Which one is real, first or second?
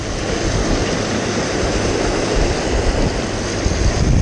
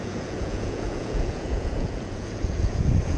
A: first